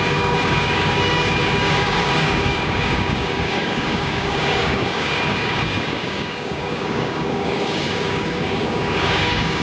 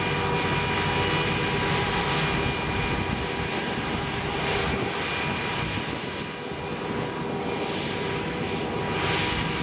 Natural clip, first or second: second